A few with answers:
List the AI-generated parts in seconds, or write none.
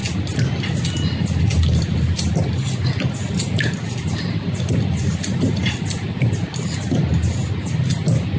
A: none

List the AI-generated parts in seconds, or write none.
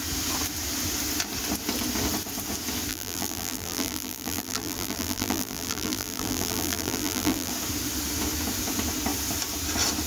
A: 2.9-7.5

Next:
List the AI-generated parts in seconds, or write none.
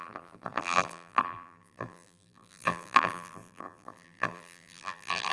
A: 0.0-5.3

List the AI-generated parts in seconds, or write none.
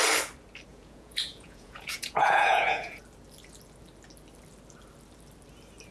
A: 0.7-3.0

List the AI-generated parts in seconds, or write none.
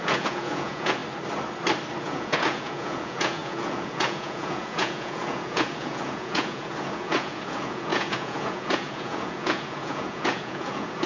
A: 0.0-1.0; 2.0-11.1